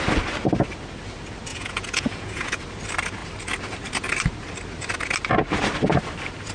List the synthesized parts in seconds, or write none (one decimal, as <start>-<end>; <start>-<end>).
1.5-2.6